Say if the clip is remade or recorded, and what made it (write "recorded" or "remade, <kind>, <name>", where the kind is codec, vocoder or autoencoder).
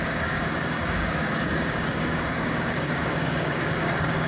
remade, codec, DAC